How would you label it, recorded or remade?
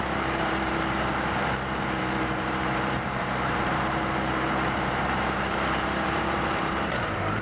remade